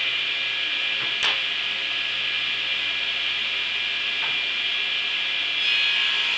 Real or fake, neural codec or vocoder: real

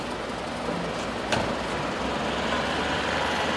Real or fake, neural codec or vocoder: real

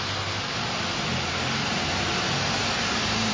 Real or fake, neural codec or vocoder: fake, vocoder, BigVGAN v2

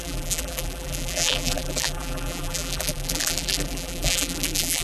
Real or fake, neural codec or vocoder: fake, vocoder, BigVGAN v2